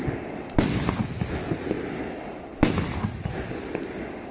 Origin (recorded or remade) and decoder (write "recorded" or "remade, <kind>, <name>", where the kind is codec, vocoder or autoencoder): recorded